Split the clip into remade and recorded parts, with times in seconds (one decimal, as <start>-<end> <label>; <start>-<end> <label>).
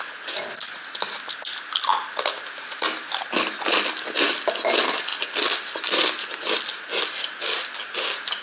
0.0-8.4 recorded